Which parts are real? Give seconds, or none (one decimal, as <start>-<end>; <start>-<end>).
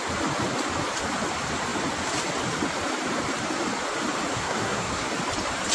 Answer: 0.0-4.3; 5.1-5.7